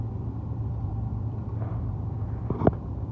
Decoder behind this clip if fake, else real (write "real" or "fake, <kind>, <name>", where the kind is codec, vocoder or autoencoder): fake, vocoder, BigVGAN v2